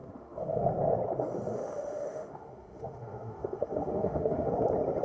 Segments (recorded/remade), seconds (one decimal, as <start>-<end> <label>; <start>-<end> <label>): 0.0-0.6 remade; 0.6-1.5 recorded; 1.5-4.5 remade; 4.5-5.0 recorded